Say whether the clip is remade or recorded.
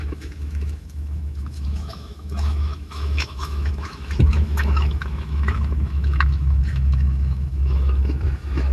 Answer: remade